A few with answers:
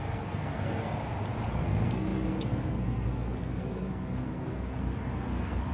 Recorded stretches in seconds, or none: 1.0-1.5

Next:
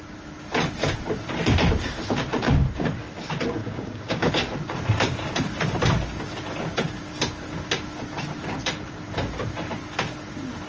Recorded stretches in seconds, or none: 0.0-3.6; 4.3-10.7